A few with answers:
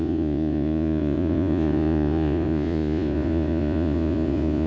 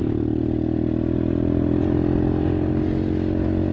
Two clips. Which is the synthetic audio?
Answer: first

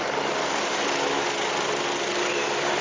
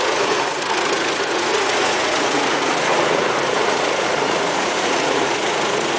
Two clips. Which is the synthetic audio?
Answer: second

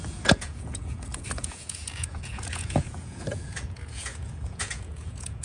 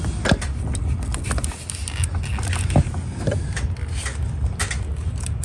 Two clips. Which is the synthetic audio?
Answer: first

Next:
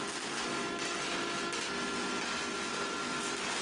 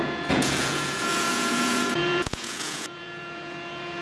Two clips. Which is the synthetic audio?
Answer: second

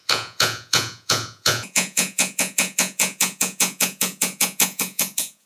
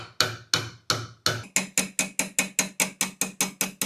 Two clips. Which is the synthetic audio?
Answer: first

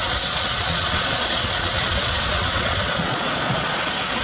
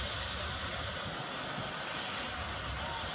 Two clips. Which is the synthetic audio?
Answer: first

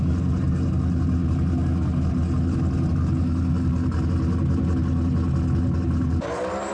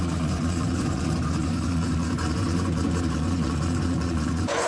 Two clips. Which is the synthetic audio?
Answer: second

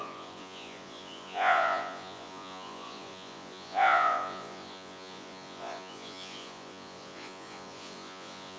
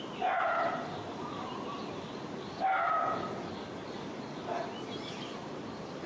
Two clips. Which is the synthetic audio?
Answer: first